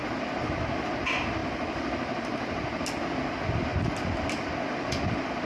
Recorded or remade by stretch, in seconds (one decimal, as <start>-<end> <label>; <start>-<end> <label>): 0.0-5.5 recorded